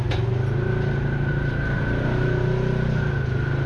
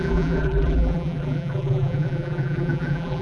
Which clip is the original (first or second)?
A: first